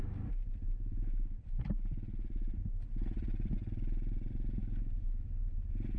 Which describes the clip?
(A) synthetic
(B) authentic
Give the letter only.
B